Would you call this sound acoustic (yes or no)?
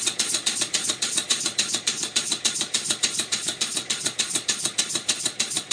no